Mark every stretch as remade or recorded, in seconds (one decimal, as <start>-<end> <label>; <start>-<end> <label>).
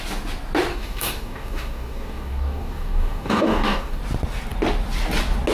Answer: 0.0-0.7 recorded; 0.7-4.0 remade; 4.0-5.5 recorded